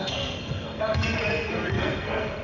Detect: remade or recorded remade